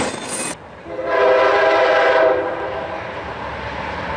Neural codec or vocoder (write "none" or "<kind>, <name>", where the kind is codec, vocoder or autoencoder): none